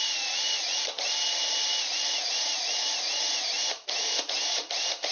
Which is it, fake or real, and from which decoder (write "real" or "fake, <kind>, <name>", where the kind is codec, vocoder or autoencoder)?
fake, vocoder, Vocos